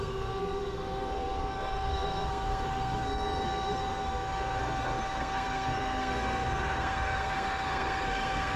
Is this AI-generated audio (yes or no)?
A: yes